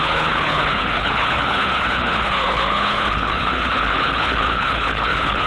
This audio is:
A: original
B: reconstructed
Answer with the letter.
B